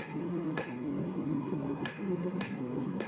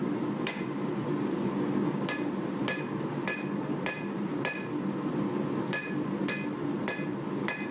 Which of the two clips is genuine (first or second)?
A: second